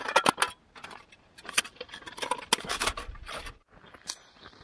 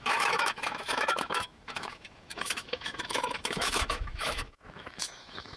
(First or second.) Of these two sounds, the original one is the first